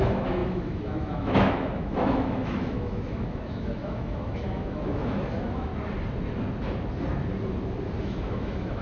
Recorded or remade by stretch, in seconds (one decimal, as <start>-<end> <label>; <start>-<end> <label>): 0.0-5.7 remade; 5.7-8.0 recorded; 8.0-8.8 remade

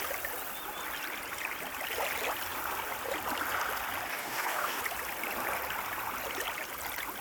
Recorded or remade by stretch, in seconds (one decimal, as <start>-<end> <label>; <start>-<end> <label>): 0.0-4.1 recorded; 4.1-4.8 remade; 4.8-7.2 recorded

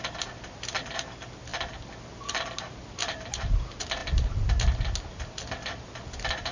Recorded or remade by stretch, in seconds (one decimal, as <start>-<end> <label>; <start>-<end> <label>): 0.0-6.5 recorded

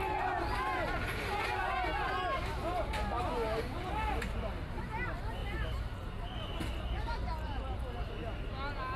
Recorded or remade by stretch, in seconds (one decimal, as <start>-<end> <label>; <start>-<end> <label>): 0.0-9.0 recorded